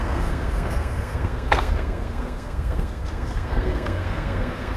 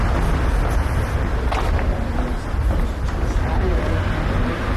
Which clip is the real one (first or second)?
second